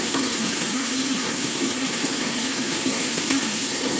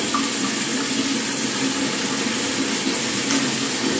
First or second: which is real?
second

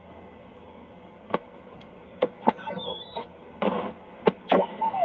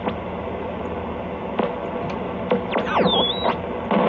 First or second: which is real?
second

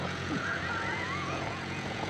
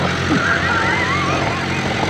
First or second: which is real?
second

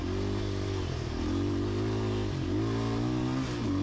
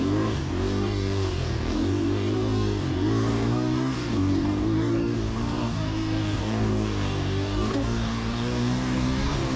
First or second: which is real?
first